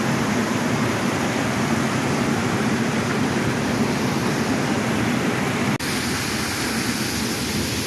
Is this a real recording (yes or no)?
yes